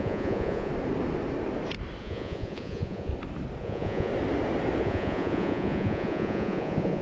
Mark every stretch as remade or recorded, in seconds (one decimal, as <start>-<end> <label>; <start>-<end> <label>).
0.0-0.7 remade; 0.7-2.0 recorded; 2.0-3.1 remade; 3.1-3.6 recorded; 3.6-4.1 remade; 4.1-4.8 recorded; 4.8-7.0 remade